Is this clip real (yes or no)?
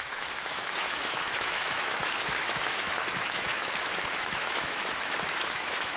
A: no